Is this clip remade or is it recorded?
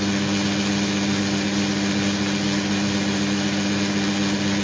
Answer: recorded